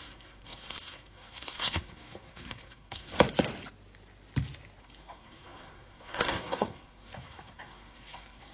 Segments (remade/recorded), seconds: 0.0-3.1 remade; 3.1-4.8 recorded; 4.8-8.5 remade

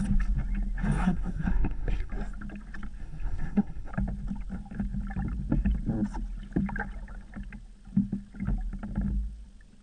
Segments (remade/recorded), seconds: 0.0-1.0 recorded; 1.0-2.1 remade; 2.1-3.0 recorded; 3.0-3.9 remade; 3.9-9.8 recorded

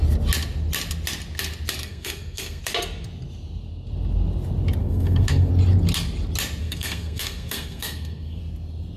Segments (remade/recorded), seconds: 0.0-1.8 recorded; 1.8-2.6 remade; 2.6-4.8 recorded; 4.8-5.5 remade; 5.5-6.6 recorded; 6.6-8.4 remade; 8.4-9.0 recorded

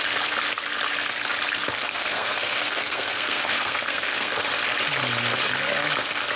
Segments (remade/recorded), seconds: 0.0-1.9 recorded; 1.9-4.4 remade; 4.4-6.4 recorded